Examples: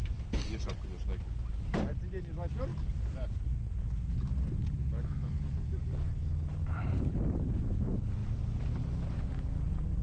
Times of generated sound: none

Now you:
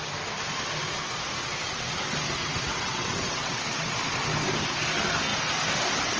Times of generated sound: 2.4-3.6 (vocoder, WaveNeXt)

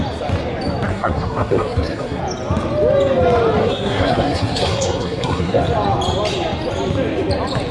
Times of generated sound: 0.9-2.2 (codec, SNAC); 3.6-5.6

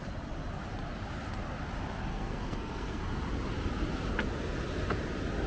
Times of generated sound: 2.1-3.0 (codec, SNAC)